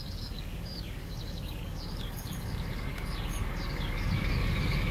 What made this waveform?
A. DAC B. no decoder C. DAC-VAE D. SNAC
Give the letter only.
A